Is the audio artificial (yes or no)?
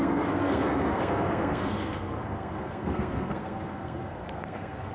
yes